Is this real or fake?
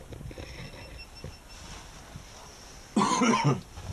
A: real